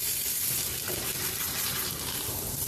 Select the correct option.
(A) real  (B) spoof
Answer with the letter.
B